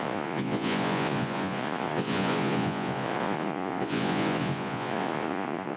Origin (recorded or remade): remade